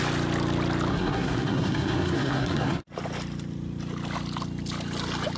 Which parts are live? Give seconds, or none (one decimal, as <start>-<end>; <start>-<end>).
0.0-0.9; 2.8-5.4